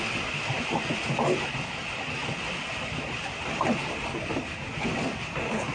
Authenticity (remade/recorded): recorded